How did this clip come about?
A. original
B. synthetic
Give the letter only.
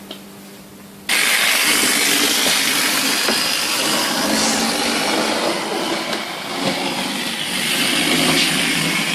A